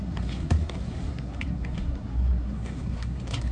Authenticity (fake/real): fake